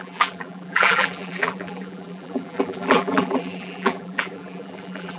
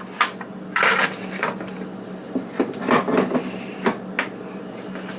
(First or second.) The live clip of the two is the second